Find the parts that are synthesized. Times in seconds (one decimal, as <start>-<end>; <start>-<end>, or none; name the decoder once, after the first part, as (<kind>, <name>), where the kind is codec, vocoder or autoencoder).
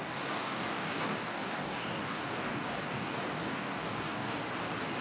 0.0-4.4 (codec, DAC)